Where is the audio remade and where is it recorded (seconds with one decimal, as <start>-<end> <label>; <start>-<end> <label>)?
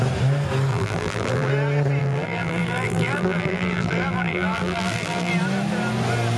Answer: 0.0-0.7 recorded; 0.7-1.5 remade; 1.5-2.0 recorded; 2.0-5.3 remade; 5.3-6.4 recorded